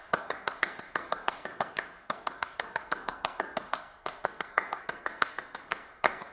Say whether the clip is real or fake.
fake